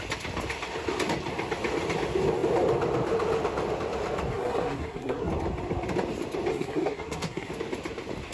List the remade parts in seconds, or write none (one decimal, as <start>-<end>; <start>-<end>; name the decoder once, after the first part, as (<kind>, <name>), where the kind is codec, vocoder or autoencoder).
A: 4.3-5.3 (codec, SNAC); 6.5-7.5